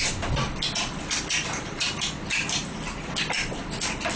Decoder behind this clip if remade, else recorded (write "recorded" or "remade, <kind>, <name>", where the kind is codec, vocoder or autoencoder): recorded